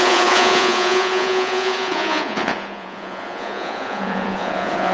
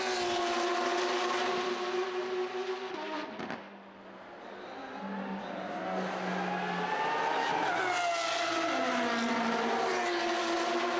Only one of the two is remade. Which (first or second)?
first